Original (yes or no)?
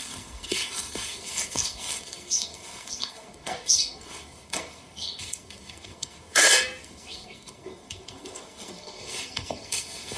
no